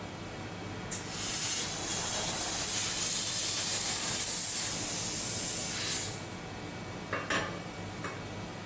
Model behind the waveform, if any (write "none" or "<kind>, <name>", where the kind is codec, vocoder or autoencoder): none